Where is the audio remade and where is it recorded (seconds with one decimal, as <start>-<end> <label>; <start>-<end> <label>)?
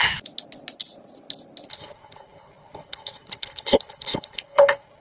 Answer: 0.0-1.7 recorded; 1.7-5.0 remade